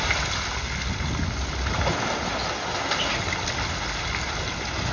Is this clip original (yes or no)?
yes